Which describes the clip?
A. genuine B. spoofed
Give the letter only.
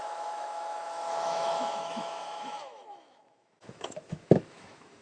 B